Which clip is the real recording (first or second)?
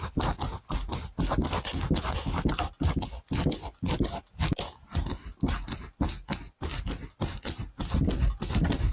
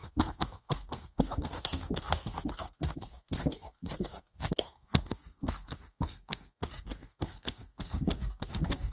first